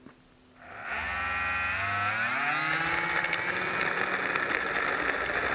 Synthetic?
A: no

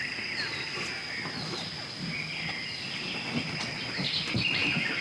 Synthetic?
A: no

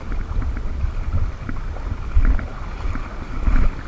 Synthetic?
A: no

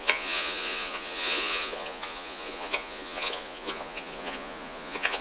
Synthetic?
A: yes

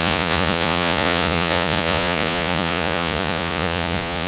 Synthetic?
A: yes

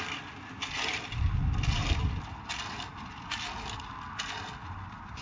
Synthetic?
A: no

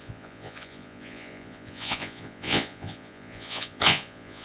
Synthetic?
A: yes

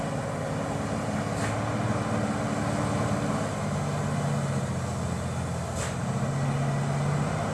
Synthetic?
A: no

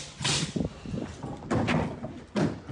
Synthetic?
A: no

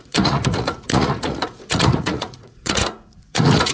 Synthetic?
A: yes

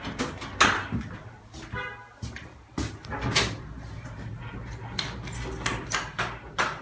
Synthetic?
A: no